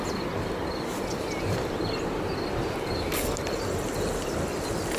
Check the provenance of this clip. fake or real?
real